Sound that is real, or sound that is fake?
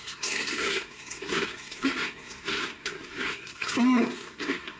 fake